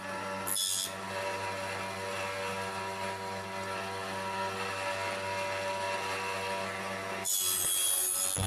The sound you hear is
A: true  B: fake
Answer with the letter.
A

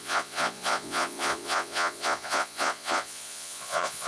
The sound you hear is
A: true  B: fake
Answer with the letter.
B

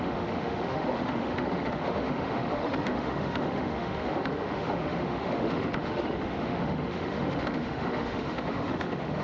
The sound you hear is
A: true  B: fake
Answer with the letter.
B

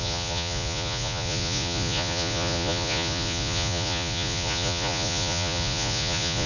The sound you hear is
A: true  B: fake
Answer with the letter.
B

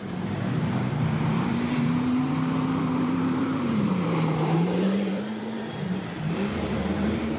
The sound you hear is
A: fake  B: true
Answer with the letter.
A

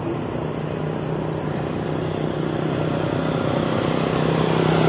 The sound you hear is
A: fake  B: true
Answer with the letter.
B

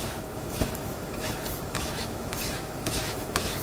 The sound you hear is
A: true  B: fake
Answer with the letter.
B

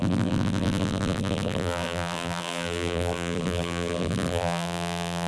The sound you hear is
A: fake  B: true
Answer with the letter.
A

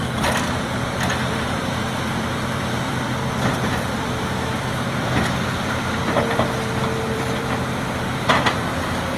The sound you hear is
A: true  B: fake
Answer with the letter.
B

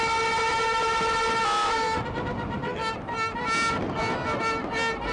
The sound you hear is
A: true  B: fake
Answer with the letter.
A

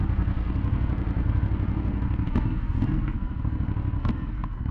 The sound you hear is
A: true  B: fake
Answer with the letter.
B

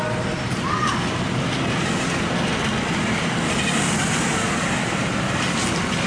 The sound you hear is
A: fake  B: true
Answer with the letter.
B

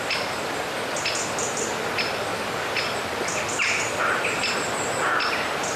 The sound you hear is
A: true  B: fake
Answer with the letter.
A